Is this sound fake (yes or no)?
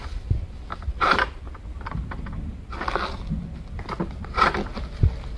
no